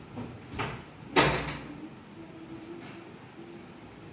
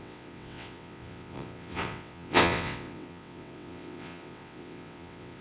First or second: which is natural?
first